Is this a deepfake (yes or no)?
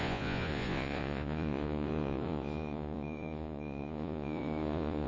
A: yes